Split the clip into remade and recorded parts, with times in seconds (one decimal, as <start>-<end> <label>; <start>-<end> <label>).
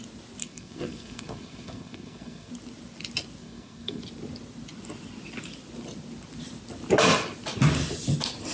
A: 0.0-0.4 recorded; 0.4-2.5 remade; 2.5-3.4 recorded; 3.4-4.0 remade; 4.0-8.5 recorded